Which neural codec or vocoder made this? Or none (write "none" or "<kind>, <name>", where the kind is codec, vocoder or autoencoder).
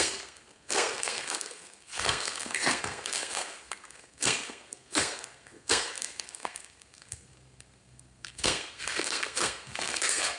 codec, SNAC